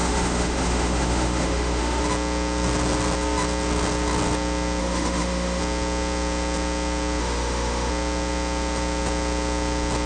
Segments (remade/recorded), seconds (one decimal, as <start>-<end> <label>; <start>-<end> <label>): 0.0-2.0 remade; 2.0-4.8 recorded; 4.8-5.6 remade; 5.6-7.2 recorded; 7.2-7.9 remade; 7.9-10.1 recorded

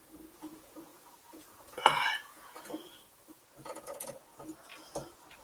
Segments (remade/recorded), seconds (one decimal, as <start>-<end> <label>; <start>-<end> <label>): 0.0-4.7 remade; 4.7-5.4 recorded

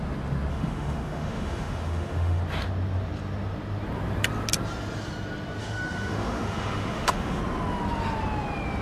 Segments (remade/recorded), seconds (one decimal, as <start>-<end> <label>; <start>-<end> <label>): 0.0-0.5 recorded; 0.5-2.4 remade; 2.4-5.6 recorded; 5.6-7.4 remade; 7.4-8.8 recorded

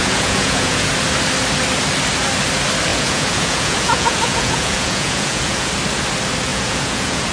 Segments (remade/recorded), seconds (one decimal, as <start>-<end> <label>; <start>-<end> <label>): 0.0-0.9 remade; 0.9-2.9 recorded; 2.9-5.7 remade; 5.7-6.5 recorded; 6.5-7.3 remade

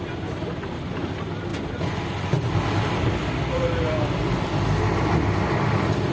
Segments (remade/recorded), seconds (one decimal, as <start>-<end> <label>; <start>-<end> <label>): 0.0-6.1 recorded

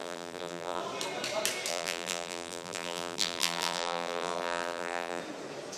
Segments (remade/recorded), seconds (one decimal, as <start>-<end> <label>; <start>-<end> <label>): 0.0-0.8 remade; 0.8-1.7 recorded; 1.7-5.2 remade; 5.2-5.8 recorded